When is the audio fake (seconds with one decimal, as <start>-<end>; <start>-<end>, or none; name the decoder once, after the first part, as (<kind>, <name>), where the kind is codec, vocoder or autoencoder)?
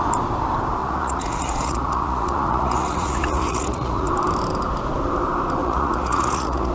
0.8-4.1 (vocoder, Vocos); 5.6-6.7